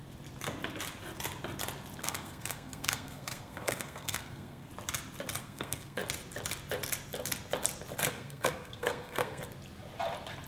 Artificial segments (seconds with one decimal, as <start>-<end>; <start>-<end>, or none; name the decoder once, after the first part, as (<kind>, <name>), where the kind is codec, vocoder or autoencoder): 2.0-4.7 (codec, SNAC); 5.4-6.0; 8.1-9.4